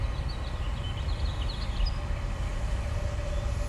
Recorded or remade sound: recorded